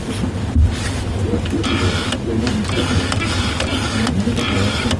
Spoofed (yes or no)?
no